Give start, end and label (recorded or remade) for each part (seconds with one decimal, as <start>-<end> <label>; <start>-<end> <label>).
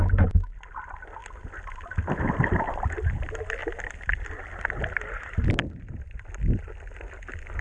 0.0-7.6 recorded